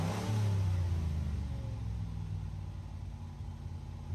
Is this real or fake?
real